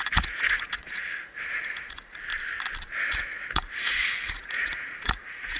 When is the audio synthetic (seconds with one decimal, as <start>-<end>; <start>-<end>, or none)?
0.0-2.3; 3.0-5.6